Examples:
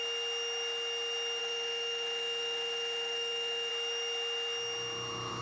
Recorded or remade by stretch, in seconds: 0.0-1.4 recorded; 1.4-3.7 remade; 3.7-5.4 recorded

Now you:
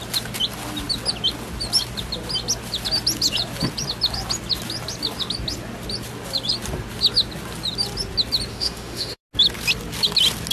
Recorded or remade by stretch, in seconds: 0.0-8.5 recorded; 8.5-9.2 remade; 9.2-10.5 recorded

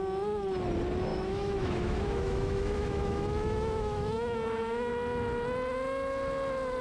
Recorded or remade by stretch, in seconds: 0.0-1.1 recorded; 1.1-4.9 remade; 4.9-6.8 recorded